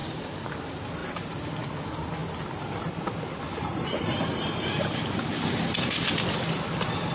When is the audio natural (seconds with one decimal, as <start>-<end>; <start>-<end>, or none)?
0.6-7.1